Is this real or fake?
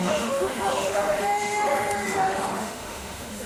fake